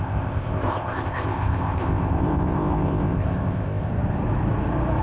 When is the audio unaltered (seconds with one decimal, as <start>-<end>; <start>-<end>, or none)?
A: 3.9-5.0